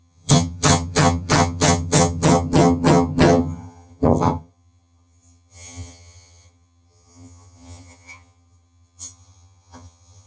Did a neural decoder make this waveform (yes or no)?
yes